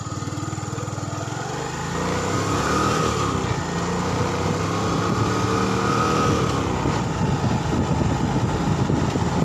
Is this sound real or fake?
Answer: real